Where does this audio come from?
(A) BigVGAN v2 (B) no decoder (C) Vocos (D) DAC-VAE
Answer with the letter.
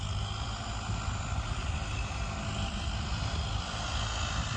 B